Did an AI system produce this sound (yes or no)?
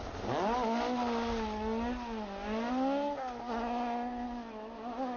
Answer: no